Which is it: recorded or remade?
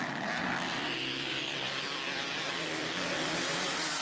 recorded